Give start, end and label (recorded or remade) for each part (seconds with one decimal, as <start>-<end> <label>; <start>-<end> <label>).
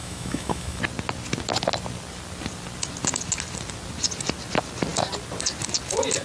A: 0.0-0.8 remade; 0.8-6.2 recorded